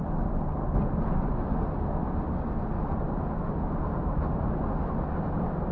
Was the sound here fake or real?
real